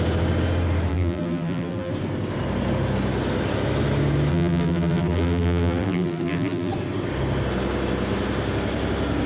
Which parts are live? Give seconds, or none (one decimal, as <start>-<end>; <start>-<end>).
0.0-0.9; 1.9-4.3; 6.7-9.3